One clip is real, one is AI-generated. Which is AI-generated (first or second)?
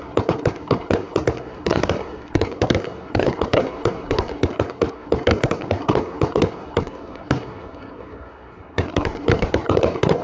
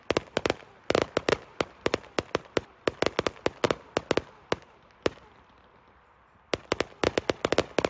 first